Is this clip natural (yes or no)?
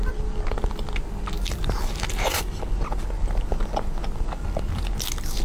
yes